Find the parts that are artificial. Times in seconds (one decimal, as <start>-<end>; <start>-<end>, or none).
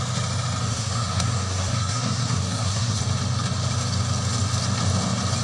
0.7-3.0